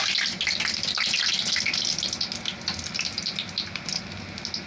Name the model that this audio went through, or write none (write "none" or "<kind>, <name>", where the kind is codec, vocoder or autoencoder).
none